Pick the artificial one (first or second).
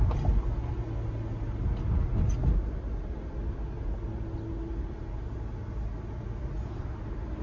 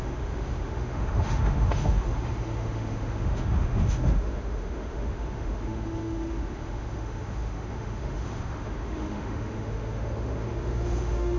second